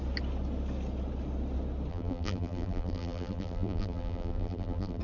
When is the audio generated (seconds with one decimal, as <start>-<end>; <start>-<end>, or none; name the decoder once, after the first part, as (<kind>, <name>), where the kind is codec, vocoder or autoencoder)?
1.9-5.0 (vocoder, BigVGAN v2)